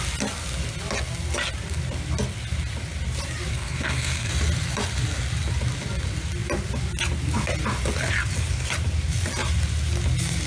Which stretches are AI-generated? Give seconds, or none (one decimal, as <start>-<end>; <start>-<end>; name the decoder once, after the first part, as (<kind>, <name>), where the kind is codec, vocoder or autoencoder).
3.5-4.3 (codec, SNAC)